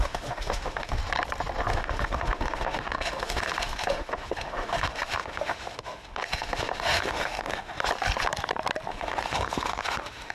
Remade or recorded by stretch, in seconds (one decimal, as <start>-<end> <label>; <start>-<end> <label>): 0.0-1.0 remade; 1.0-1.7 recorded; 1.7-7.7 remade; 7.7-8.9 recorded; 8.9-10.3 remade